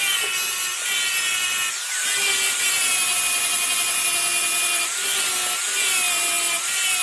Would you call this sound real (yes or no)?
yes